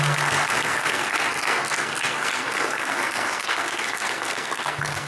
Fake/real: fake